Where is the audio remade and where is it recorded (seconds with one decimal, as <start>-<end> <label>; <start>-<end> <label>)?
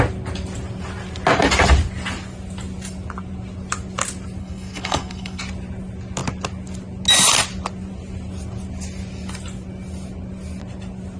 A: 0.0-4.4 recorded; 4.4-5.4 remade; 5.4-11.2 recorded